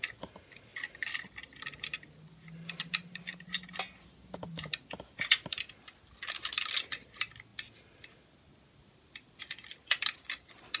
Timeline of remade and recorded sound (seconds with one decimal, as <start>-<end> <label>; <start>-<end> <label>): 0.0-10.8 recorded